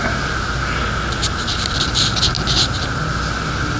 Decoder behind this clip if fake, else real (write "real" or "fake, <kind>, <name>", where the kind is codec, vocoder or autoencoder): real